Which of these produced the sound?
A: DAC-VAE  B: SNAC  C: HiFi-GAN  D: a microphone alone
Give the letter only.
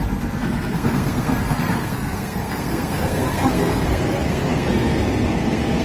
B